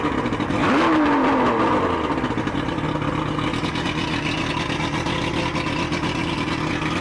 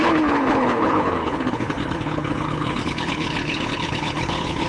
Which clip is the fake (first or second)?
second